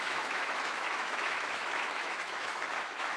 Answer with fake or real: fake